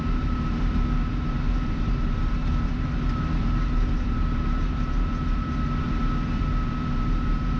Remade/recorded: remade